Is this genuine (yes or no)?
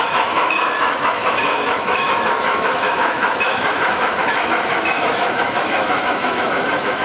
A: no